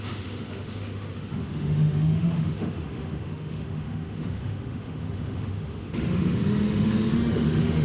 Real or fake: fake